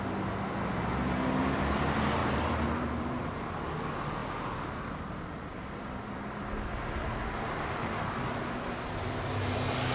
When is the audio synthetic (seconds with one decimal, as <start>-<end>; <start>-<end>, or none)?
2.2-3.3